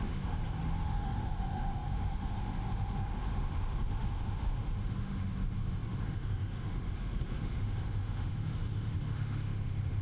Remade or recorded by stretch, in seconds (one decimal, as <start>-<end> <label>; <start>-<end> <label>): 0.0-10.0 remade